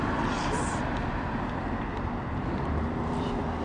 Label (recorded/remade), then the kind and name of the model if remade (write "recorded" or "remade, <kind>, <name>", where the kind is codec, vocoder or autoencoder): recorded